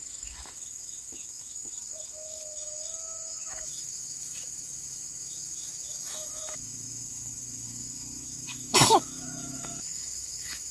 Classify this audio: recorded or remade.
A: remade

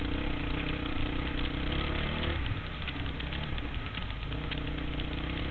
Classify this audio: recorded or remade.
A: recorded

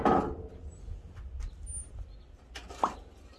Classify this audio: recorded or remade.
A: remade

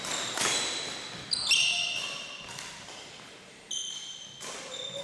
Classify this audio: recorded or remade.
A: recorded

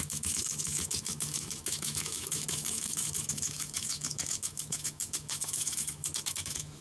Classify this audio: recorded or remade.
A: remade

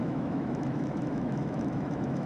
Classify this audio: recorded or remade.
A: remade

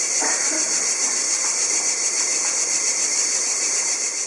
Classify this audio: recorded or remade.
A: remade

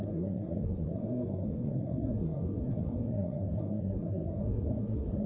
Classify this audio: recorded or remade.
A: remade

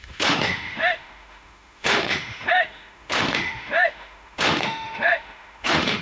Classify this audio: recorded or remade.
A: remade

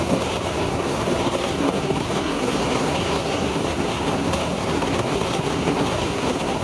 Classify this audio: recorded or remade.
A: remade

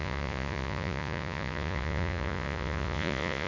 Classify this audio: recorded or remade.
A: remade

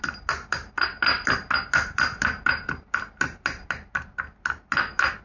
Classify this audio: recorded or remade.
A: recorded